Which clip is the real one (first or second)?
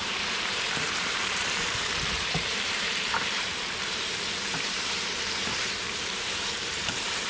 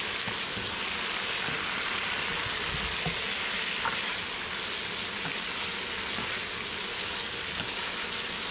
second